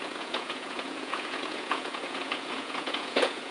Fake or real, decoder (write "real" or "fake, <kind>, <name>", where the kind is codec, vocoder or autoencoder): fake, vocoder, Vocos